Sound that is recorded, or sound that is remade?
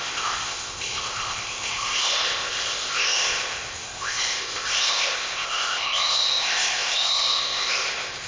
remade